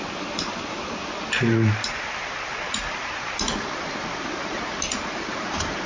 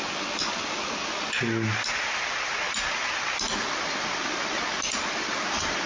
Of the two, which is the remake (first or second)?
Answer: first